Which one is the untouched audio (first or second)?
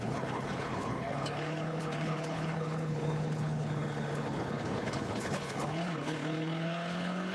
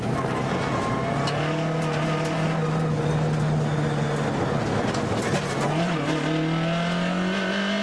second